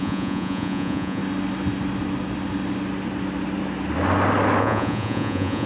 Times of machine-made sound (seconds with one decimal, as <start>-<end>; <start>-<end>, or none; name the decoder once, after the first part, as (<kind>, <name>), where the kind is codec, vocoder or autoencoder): 0.0-1.2 (vocoder, Vocos); 4.6-5.7